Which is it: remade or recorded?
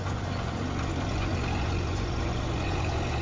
remade